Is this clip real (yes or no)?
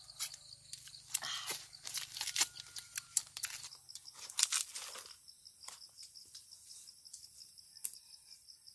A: yes